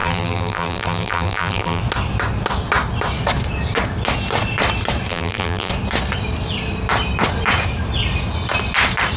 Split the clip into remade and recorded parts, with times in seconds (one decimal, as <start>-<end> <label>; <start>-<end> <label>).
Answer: 0.0-1.8 remade; 1.8-5.1 recorded; 5.1-5.7 remade; 5.7-9.2 recorded